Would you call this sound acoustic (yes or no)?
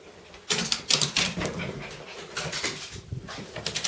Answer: yes